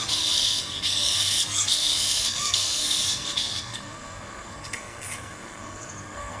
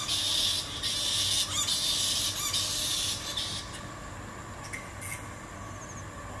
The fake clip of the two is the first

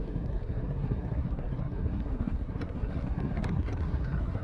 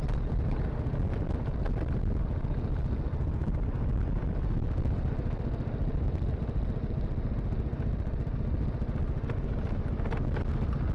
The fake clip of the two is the first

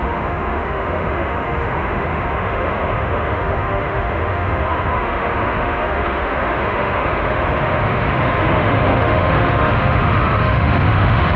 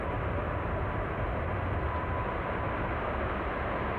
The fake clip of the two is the first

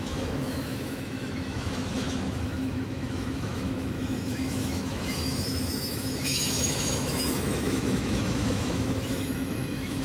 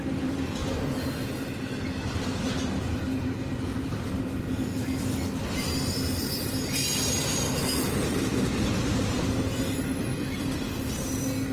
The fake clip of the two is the first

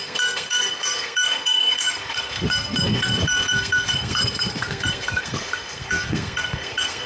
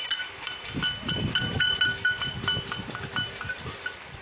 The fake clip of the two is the first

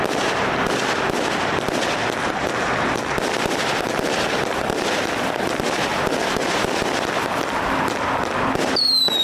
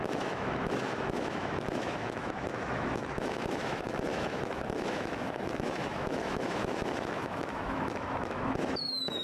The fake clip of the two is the second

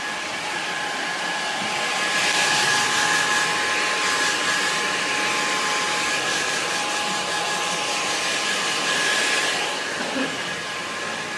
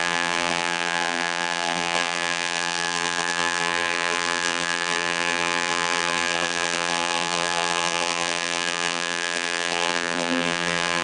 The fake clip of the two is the second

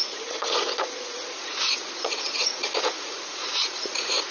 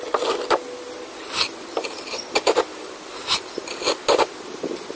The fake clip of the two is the first